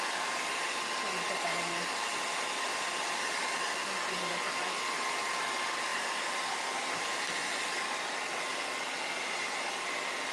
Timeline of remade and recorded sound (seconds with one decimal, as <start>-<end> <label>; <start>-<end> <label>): 0.0-10.3 recorded